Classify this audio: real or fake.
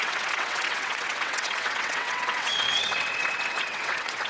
fake